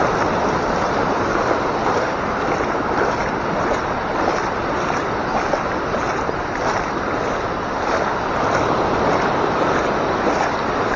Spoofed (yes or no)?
no